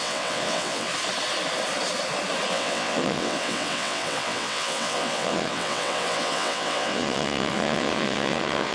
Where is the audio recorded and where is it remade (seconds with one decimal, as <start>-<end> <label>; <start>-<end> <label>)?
0.0-0.9 remade; 0.9-2.5 recorded; 2.5-8.7 remade